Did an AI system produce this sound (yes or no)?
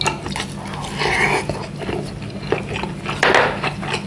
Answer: no